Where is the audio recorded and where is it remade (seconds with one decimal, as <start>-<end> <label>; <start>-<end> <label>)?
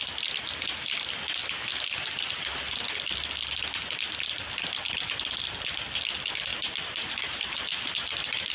0.0-6.5 recorded; 6.5-8.5 remade